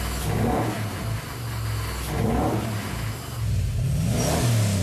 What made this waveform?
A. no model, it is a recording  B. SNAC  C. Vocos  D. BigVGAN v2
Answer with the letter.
A